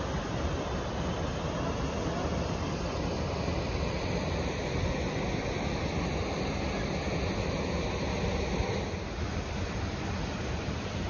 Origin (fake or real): real